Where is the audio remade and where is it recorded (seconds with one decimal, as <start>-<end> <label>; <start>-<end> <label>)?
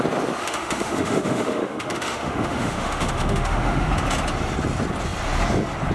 0.0-0.4 recorded; 0.4-3.9 remade; 3.9-5.9 recorded